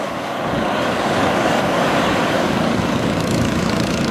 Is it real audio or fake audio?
fake